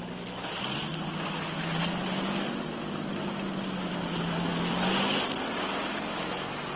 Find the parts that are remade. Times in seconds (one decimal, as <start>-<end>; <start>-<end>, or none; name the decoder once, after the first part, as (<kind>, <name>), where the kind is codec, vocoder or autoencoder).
none